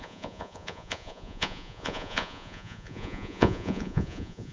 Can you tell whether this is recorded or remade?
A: remade